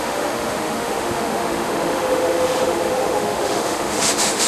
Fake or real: fake